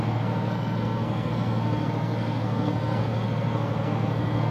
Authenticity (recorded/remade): remade